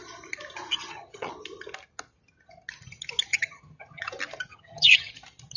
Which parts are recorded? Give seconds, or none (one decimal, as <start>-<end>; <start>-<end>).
0.0-0.8; 1.3-3.3; 4.1-4.5; 5.1-5.6